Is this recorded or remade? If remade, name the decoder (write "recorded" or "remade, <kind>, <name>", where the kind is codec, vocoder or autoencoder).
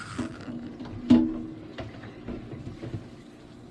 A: recorded